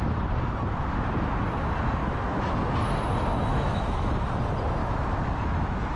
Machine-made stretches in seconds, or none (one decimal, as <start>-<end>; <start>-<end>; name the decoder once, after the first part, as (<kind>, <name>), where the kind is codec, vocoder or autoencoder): 2.0-2.5 (autoencoder, DAC-VAE); 3.5-4.1; 4.8-6.0